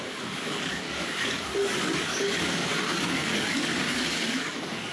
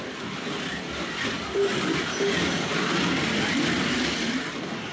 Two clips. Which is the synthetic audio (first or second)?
first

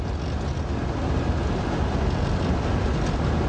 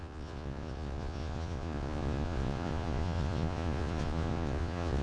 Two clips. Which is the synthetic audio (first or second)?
second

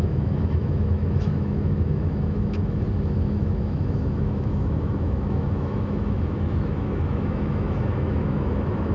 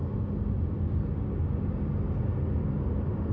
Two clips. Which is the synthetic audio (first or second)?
first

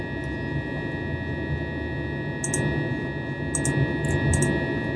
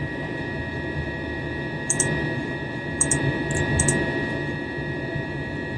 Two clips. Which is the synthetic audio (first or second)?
second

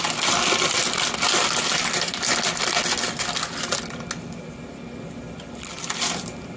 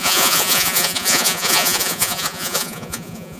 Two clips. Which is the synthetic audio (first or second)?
second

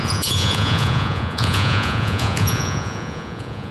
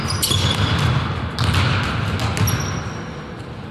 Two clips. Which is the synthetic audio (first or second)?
first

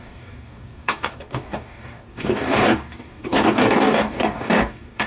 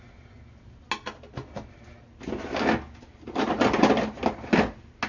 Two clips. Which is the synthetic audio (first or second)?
first